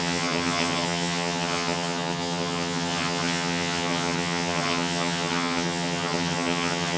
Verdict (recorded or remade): remade